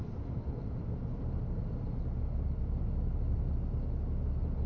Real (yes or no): yes